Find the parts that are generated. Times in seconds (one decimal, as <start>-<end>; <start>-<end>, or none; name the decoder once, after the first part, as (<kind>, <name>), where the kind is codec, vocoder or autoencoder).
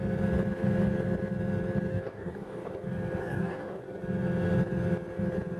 1.9-2.7 (codec, DAC); 3.2-3.8